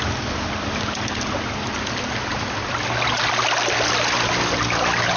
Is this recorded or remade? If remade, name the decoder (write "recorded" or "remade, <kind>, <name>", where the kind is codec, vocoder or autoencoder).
recorded